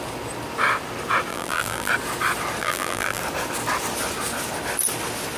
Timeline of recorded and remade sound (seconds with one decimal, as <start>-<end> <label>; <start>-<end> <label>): 0.0-1.3 recorded; 1.3-1.9 remade; 1.9-2.6 recorded; 2.6-3.2 remade; 3.2-5.4 recorded